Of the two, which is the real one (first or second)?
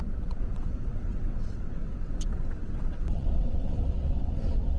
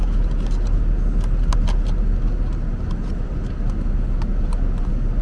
second